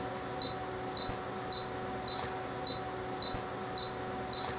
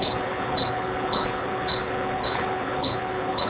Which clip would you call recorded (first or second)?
first